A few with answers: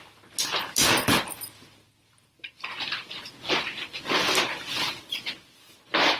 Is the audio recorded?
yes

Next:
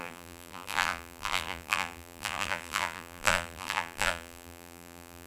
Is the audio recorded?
no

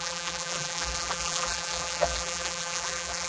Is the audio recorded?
no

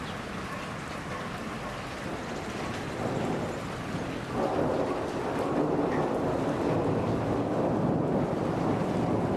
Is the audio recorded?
yes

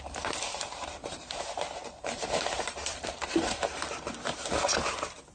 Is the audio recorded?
no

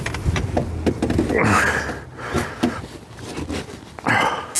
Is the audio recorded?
yes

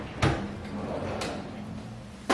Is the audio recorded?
yes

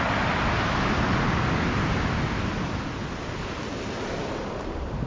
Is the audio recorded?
yes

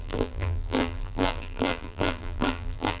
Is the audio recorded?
no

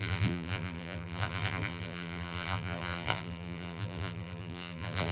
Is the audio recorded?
no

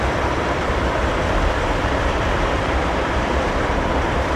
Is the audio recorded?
no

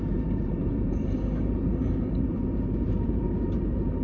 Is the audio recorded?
no